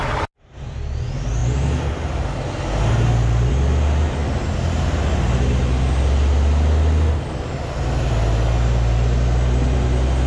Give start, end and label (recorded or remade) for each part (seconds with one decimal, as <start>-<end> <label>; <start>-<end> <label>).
0.0-10.3 recorded